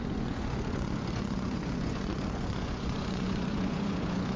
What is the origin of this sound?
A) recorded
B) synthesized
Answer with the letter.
B